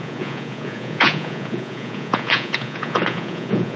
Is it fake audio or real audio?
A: fake